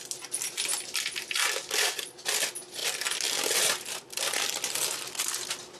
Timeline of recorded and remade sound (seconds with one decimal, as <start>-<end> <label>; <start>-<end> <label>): 0.0-1.4 recorded; 1.4-2.0 remade; 2.0-5.8 recorded